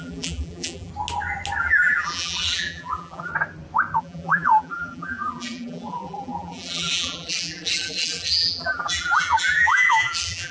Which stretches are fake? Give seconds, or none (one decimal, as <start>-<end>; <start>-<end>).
0.0-0.9; 1.6-3.3; 4.0-10.5